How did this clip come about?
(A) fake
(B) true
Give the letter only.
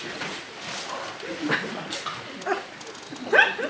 B